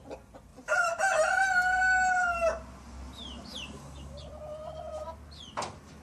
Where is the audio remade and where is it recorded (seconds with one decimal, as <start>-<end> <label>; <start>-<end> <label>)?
0.0-0.5 recorded; 0.5-1.4 remade; 1.4-3.5 recorded; 3.5-4.3 remade; 4.3-6.0 recorded